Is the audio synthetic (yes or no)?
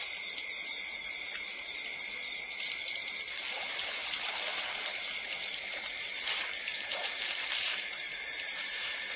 yes